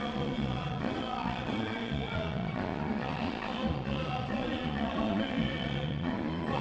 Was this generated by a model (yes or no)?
yes